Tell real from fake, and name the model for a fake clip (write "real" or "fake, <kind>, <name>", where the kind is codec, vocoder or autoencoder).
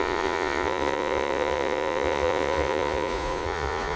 fake, vocoder, Vocos